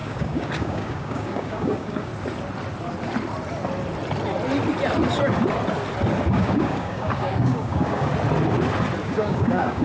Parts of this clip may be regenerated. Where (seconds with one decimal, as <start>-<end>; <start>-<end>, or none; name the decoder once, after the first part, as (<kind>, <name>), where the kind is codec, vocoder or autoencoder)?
0.0-2.1 (codec, DAC); 6.3-8.1; 9.0-9.8